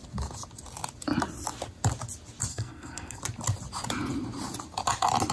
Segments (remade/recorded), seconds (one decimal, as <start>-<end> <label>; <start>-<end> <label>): 0.0-2.5 recorded; 2.5-3.2 remade; 3.2-5.3 recorded